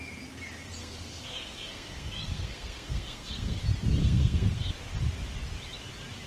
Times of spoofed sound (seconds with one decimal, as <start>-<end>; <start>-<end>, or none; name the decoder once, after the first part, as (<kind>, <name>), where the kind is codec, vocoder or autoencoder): 0.8-3.6 (codec, SNAC); 4.0-4.7